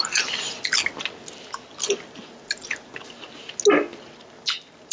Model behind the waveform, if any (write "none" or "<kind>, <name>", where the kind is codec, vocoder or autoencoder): none